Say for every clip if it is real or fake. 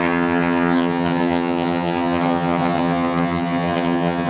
fake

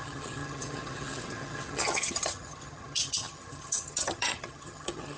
fake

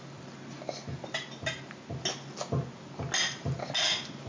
real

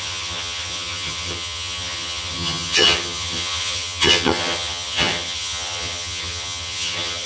fake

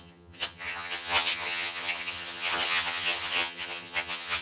fake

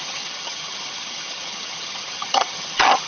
fake